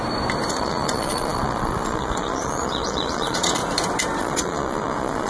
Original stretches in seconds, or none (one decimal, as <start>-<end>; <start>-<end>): 0.0-0.5; 3.6-4.2